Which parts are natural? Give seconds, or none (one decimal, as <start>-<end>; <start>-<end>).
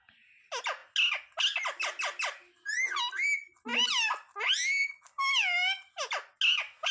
0.0-6.9